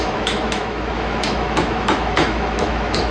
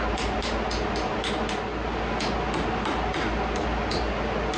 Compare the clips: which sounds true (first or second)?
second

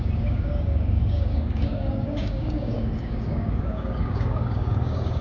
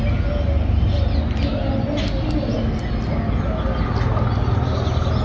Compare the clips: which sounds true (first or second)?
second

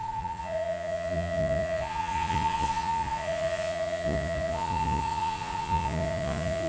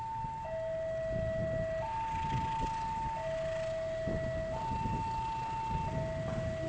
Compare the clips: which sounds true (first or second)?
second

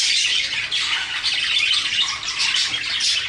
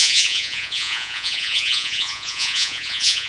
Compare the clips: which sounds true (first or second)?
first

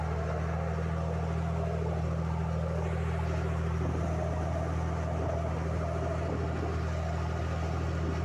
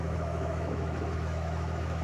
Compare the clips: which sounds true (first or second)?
first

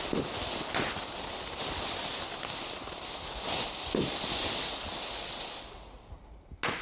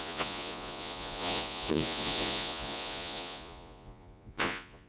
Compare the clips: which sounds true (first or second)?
first